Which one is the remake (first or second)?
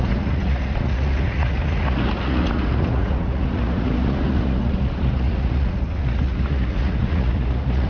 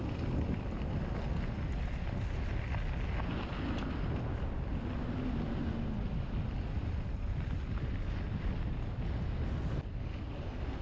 first